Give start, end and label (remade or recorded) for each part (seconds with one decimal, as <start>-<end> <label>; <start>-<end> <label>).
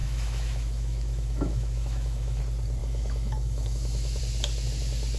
0.0-2.4 remade; 2.4-2.8 recorded; 2.8-4.2 remade; 4.2-5.2 recorded